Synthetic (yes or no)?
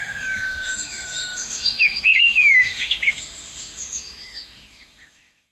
yes